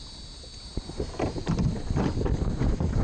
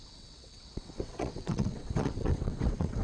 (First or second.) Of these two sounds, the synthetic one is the second